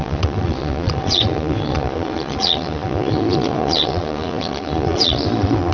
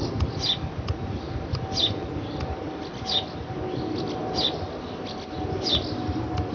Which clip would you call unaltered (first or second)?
second